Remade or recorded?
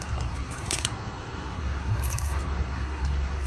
remade